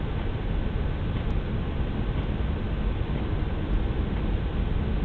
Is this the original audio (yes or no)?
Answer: yes